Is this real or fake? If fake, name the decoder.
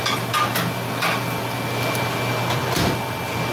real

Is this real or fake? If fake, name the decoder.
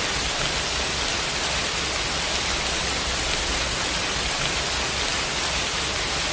real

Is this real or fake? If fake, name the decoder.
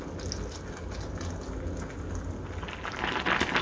real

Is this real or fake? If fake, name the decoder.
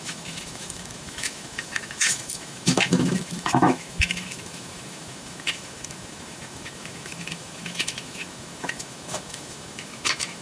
fake, autoencoder, DAC-VAE